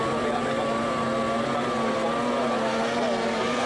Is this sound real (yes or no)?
yes